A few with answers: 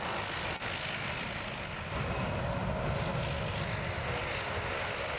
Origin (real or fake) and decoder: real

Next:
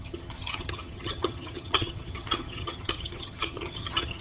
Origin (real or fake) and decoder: fake, vocoder, HiFi-GAN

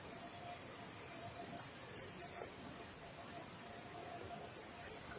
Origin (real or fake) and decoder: real